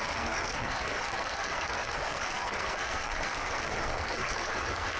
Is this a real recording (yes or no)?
no